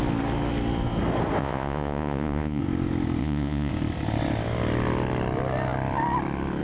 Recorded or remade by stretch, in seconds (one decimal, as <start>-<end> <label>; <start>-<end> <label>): 0.0-1.4 recorded; 1.4-2.6 remade; 2.6-3.2 recorded; 3.2-3.7 remade; 3.7-6.6 recorded